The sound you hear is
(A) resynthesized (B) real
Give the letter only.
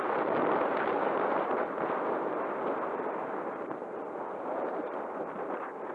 B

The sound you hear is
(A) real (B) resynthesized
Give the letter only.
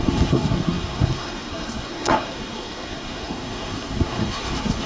B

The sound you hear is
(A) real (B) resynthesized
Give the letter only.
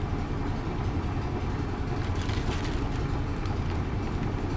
A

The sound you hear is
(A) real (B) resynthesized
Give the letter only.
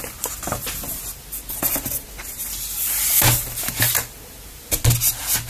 A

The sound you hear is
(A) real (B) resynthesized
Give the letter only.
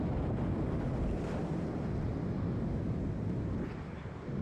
A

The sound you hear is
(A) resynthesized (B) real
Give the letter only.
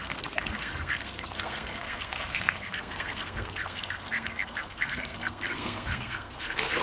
A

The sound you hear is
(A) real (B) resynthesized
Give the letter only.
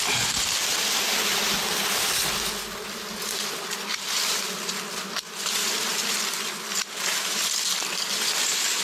A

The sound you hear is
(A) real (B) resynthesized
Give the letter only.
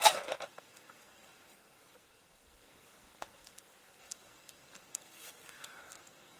B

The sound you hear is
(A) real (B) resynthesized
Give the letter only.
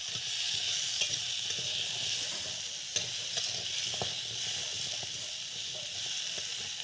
A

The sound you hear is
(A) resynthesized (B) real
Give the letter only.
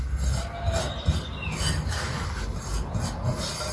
B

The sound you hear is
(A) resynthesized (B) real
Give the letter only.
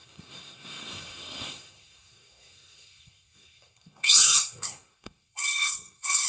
A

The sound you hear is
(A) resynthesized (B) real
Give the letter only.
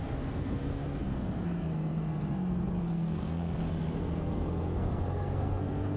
A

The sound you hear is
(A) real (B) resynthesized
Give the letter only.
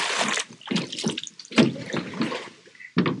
A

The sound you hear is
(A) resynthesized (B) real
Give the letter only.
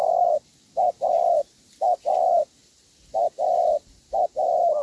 B